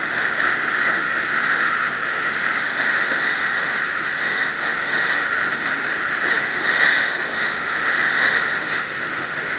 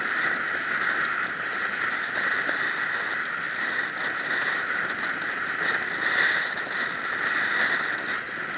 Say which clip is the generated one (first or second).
first